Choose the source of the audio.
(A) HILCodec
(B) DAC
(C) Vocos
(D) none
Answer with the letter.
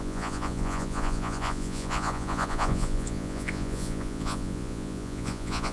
C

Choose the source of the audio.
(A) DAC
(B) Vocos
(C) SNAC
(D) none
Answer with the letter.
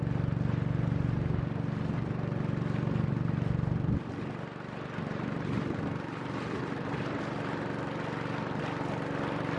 D